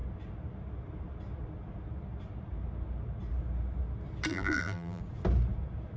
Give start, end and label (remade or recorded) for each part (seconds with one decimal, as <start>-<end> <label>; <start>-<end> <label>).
0.0-4.3 recorded; 4.3-5.0 remade; 5.0-6.0 recorded